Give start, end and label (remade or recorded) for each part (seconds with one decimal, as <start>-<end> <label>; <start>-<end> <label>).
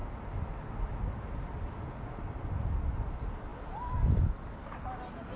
0.0-5.4 recorded